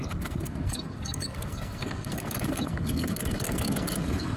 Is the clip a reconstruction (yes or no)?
yes